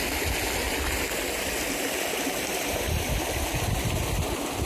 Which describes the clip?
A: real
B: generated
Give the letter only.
B